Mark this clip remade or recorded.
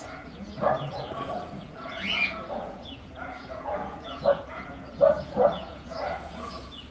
remade